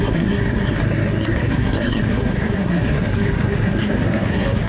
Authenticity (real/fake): fake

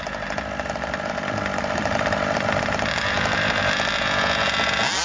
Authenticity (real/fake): real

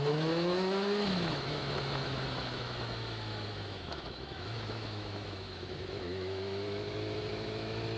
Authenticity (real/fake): fake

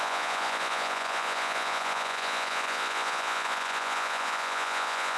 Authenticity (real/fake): fake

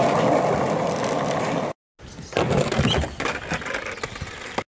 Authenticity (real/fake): real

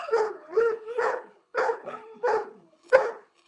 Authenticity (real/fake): fake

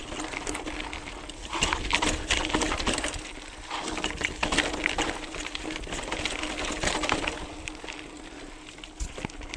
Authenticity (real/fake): real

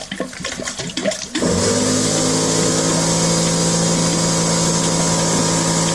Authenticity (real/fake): real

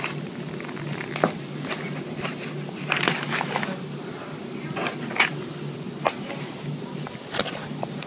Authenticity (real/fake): real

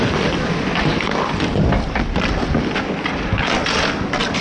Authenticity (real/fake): real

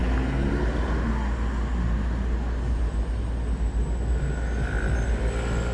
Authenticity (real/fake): real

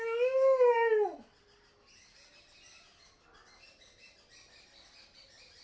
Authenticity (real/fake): real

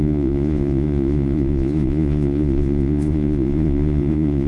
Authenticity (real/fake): fake